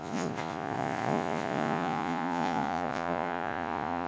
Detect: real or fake fake